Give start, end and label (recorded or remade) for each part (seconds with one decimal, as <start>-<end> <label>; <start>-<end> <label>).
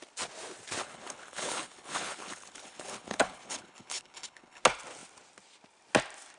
0.0-0.8 recorded; 0.8-4.6 remade; 4.6-6.4 recorded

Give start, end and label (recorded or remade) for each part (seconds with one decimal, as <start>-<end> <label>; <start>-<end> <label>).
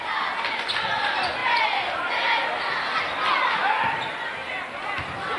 0.0-4.4 recorded; 4.4-5.4 remade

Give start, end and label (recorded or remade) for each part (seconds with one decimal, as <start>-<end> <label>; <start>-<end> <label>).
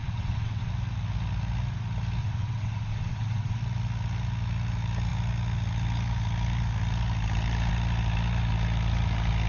0.0-0.7 remade; 0.7-2.2 recorded; 2.2-3.6 remade; 3.6-9.5 recorded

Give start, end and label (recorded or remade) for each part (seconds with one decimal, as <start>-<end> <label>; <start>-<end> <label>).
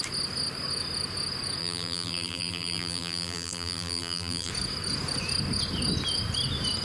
0.0-1.6 recorded; 1.6-4.5 remade; 4.5-6.8 recorded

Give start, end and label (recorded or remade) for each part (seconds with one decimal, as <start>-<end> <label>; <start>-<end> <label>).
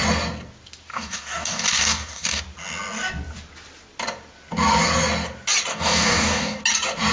0.0-0.9 recorded; 0.9-2.4 remade; 2.4-5.7 recorded; 5.7-6.6 remade; 6.6-7.1 recorded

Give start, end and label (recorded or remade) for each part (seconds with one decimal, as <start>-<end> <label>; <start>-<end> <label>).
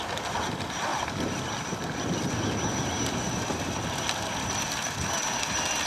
0.0-5.9 recorded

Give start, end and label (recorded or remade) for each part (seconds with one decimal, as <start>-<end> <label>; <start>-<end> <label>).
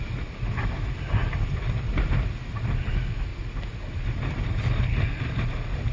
0.0-5.9 recorded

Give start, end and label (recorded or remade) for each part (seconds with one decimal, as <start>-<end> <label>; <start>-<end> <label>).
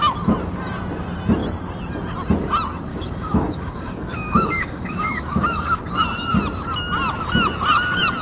0.0-2.9 recorded; 2.9-5.8 remade; 5.8-8.2 recorded